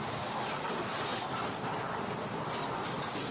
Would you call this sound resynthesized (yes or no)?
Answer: yes